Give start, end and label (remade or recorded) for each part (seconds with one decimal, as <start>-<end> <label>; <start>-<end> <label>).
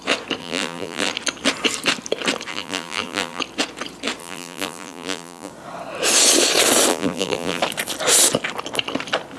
0.0-0.4 recorded; 0.4-1.1 remade; 1.1-2.5 recorded; 2.5-3.4 remade; 3.4-4.2 recorded; 4.2-5.5 remade; 5.5-6.9 recorded; 6.9-7.6 remade; 7.6-9.4 recorded